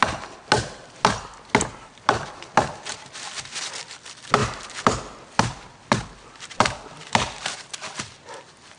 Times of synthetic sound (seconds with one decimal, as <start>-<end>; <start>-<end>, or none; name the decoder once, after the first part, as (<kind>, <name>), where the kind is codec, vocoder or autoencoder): none